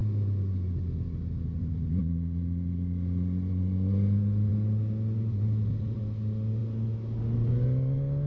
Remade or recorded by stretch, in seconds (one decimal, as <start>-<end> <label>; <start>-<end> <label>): 0.0-8.3 recorded